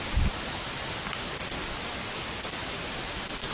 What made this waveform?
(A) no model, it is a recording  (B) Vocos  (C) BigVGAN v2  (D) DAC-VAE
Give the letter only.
A